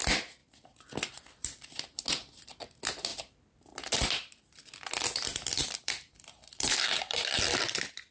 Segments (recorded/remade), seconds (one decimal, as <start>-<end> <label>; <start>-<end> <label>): 0.0-0.4 recorded; 0.4-2.0 remade; 2.0-3.1 recorded; 3.1-7.4 remade; 7.4-8.1 recorded